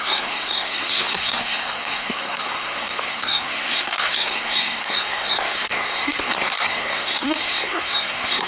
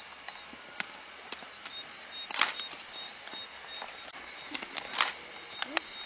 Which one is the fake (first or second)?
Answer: first